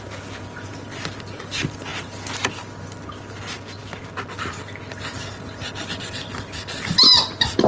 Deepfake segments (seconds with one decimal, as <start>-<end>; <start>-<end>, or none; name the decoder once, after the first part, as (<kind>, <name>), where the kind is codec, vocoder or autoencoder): none